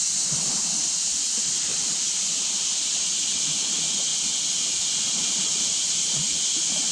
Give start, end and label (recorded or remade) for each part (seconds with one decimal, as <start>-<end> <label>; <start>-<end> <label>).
0.0-1.7 recorded; 1.7-2.8 remade; 2.8-4.1 recorded; 4.1-4.7 remade; 4.7-5.2 recorded; 5.2-6.3 remade; 6.3-6.9 recorded